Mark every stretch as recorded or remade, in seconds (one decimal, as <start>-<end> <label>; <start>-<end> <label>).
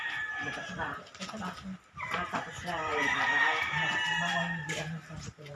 0.0-2.9 recorded; 2.9-3.7 remade; 3.7-5.6 recorded